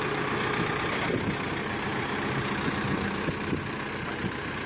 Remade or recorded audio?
recorded